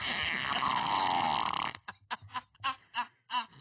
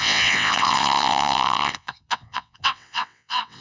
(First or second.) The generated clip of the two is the second